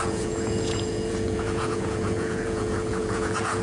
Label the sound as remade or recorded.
remade